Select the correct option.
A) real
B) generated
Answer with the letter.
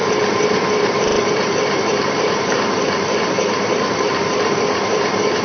B